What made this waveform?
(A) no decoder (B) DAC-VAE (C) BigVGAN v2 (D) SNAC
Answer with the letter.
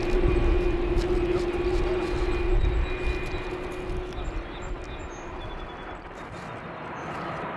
A